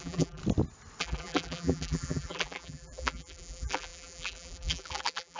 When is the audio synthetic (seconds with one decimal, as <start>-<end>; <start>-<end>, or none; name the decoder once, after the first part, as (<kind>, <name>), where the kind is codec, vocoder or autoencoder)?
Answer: 0.0-0.4 (vocoder, BigVGAN v2); 1.0-5.4